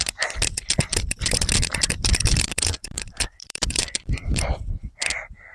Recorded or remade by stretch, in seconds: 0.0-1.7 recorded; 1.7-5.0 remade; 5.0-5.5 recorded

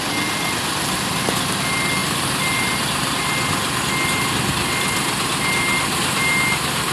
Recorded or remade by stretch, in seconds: 0.0-2.0 recorded; 2.0-3.2 remade; 3.2-6.9 recorded

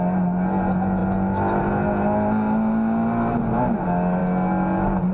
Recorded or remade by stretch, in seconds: 0.0-5.1 recorded